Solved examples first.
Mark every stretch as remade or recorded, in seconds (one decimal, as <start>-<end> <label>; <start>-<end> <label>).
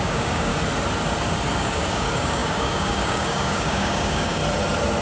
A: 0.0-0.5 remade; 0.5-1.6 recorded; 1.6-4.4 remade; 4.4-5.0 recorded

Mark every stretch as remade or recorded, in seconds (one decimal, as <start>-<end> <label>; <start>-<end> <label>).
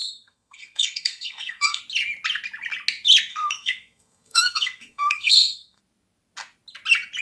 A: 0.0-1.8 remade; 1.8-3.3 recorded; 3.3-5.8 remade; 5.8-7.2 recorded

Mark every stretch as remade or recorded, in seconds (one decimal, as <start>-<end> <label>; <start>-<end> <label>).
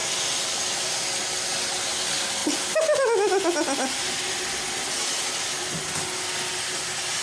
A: 0.0-7.2 recorded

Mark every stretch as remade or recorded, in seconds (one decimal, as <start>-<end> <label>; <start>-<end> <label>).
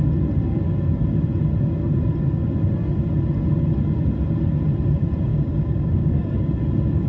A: 0.0-5.3 recorded; 5.3-6.5 remade; 6.5-7.1 recorded